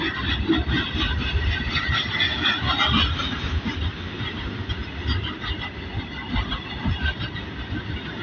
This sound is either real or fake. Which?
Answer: real